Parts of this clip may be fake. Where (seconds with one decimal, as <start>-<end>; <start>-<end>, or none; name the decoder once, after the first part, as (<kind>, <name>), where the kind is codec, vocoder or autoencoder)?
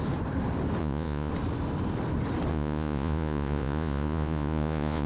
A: 0.8-1.3 (vocoder, Vocos); 2.5-5.1